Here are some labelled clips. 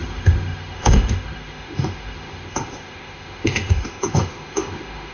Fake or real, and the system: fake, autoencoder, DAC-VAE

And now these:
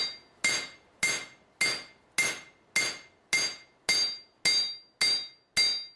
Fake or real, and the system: real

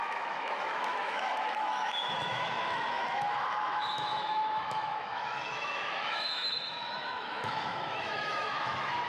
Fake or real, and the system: fake, autoencoder, DAC-VAE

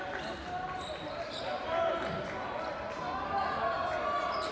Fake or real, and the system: real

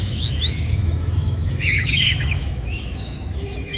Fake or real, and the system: fake, autoencoder, DAC-VAE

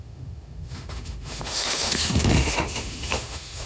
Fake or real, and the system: fake, autoencoder, DAC-VAE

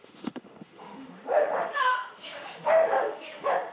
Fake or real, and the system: fake, autoencoder, DAC-VAE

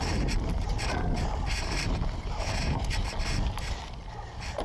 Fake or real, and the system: real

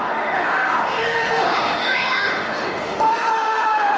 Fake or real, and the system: fake, autoencoder, DAC-VAE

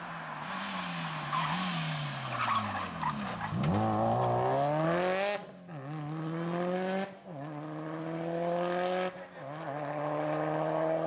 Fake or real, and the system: real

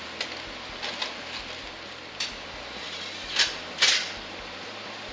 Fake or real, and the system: real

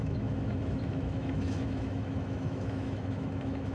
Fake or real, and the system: fake, autoencoder, DAC-VAE